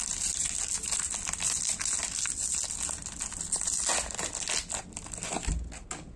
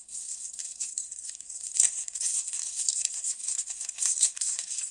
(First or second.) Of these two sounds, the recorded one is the first